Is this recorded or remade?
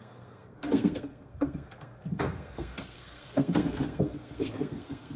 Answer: remade